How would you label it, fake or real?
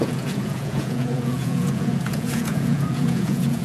fake